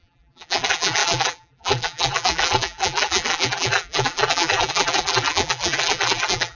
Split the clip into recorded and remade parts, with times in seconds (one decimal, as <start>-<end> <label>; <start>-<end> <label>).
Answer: 0.0-6.6 remade